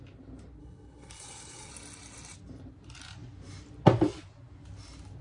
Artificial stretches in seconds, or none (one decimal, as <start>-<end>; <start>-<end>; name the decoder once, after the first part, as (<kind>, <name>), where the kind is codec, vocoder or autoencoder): 0.6-1.7 (codec, HILCodec)